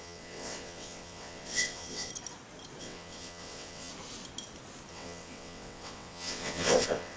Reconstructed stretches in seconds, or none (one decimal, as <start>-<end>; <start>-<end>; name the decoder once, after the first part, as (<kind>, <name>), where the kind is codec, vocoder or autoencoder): 0.0-2.1 (vocoder, WaveNeXt); 2.8-3.9; 4.9-7.2